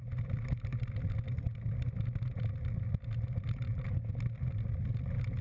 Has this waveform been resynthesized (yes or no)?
no